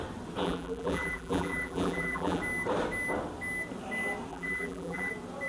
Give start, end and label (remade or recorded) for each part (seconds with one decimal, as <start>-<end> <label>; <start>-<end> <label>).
0.0-0.4 recorded; 0.4-2.4 remade; 2.4-4.3 recorded; 4.3-5.1 remade; 5.1-5.5 recorded